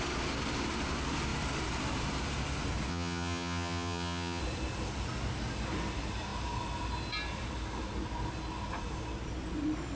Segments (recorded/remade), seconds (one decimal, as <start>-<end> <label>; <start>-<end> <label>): 0.0-2.9 recorded; 2.9-4.4 remade; 4.4-10.0 recorded